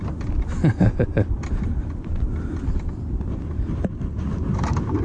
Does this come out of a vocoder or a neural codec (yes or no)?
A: no